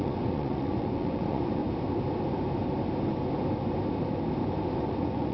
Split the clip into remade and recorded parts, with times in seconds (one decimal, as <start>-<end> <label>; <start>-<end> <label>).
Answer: 0.0-1.6 remade; 1.6-4.8 recorded; 4.8-5.3 remade